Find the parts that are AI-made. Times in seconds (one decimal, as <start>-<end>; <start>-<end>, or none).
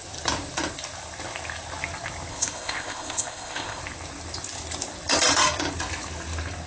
2.3-3.8